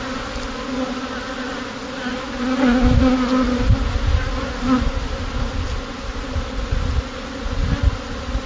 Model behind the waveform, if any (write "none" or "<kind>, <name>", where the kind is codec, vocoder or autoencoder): none